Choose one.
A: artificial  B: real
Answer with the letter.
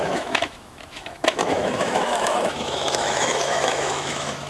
A